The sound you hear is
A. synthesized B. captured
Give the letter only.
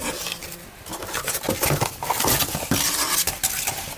B